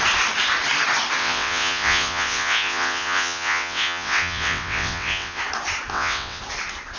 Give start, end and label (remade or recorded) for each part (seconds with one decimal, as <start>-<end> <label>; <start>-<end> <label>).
0.0-1.2 recorded; 1.2-5.4 remade; 5.4-5.9 recorded; 5.9-6.4 remade; 6.4-7.0 recorded